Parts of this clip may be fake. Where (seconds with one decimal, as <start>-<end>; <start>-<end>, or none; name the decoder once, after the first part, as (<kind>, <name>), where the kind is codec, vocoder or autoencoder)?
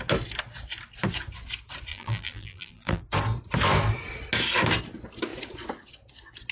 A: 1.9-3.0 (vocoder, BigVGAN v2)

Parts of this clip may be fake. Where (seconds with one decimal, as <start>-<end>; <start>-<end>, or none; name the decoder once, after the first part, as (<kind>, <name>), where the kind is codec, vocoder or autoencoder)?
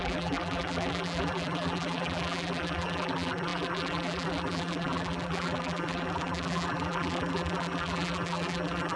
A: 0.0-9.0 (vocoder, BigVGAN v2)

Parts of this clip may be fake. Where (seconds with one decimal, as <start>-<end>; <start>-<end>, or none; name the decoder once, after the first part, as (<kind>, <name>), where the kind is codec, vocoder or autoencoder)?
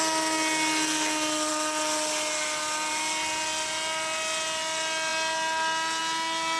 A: none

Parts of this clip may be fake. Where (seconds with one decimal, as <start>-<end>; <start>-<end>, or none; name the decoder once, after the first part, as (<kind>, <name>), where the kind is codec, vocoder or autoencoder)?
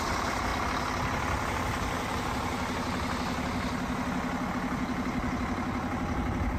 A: none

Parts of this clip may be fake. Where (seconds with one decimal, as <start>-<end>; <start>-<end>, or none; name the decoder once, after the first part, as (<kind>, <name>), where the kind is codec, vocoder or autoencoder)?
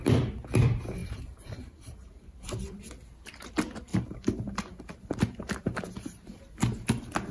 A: 1.0-2.8 (vocoder, BigVGAN v2); 3.9-6.4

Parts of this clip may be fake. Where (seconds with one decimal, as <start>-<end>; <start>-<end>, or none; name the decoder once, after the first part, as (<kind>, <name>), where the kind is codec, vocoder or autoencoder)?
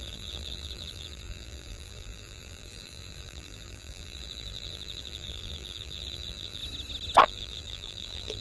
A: 0.0-6.6 (vocoder, BigVGAN v2); 7.2-8.4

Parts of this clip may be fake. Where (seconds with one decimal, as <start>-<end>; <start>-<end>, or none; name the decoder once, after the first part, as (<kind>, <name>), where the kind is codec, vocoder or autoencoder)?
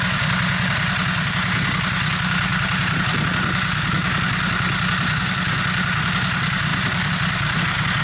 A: 2.5-3.1 (vocoder, BigVGAN v2); 6.7-7.6